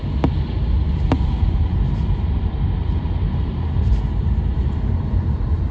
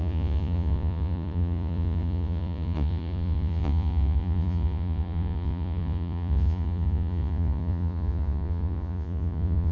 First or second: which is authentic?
first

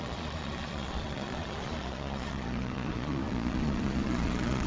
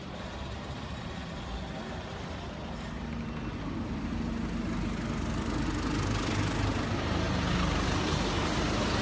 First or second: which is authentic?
second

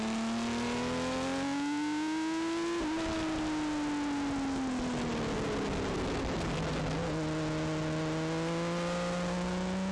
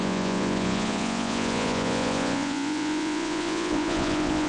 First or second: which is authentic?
first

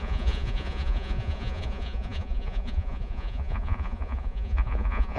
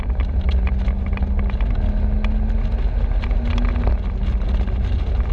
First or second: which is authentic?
second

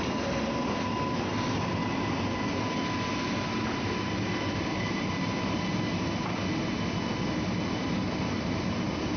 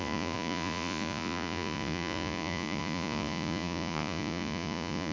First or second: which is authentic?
first